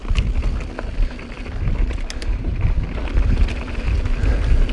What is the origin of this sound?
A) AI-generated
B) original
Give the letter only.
B